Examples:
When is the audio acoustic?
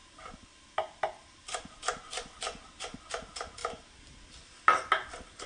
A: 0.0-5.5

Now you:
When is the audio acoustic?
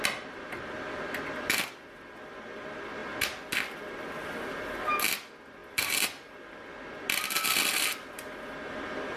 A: 0.0-9.2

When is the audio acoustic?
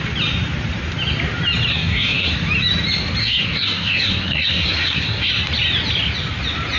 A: 0.0-1.7; 2.3-3.2; 5.3-6.8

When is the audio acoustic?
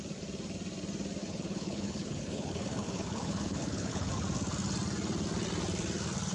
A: 0.0-1.2; 4.1-6.3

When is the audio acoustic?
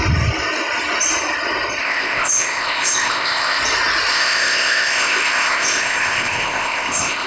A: 0.0-1.8; 3.6-4.1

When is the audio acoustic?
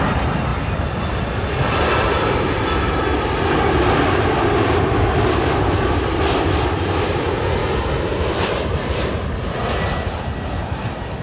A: 0.0-11.2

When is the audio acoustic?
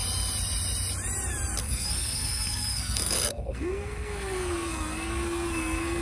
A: 0.0-1.6